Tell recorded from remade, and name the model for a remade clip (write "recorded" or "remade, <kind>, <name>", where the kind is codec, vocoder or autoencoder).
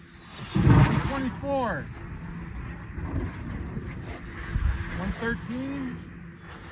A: recorded